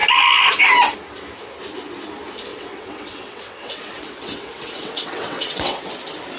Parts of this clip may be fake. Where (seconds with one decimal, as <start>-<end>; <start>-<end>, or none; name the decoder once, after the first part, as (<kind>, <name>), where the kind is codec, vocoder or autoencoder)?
2.5-5.8 (vocoder, WaveNeXt)